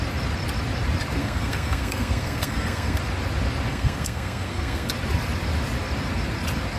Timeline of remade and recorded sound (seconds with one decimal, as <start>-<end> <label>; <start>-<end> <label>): 0.0-1.2 recorded; 1.2-3.0 remade; 3.0-3.7 recorded; 3.7-4.9 remade; 4.9-6.8 recorded